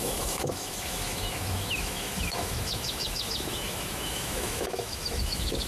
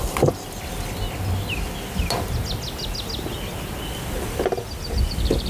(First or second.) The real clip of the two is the second